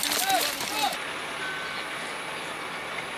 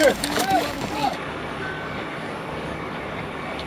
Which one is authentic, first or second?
first